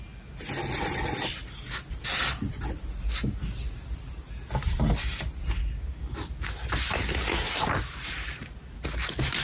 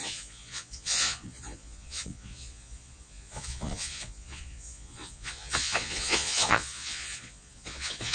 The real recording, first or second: first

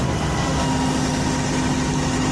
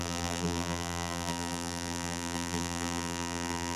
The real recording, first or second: first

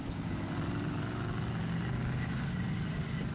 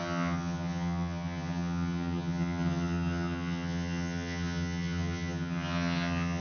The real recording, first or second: first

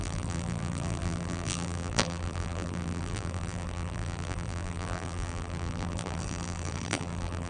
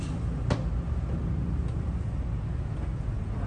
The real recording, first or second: second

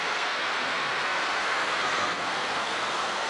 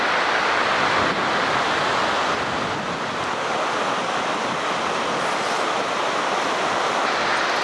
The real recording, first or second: second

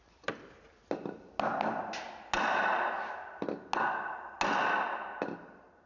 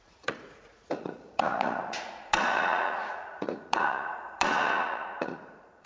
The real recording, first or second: first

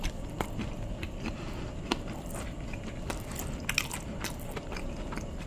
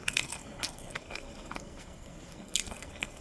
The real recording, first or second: first